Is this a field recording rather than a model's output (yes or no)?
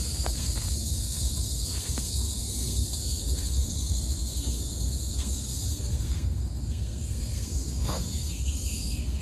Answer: no